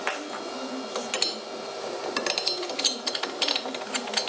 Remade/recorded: recorded